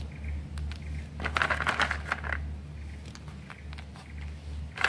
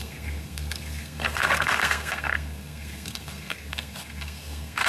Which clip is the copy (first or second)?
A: second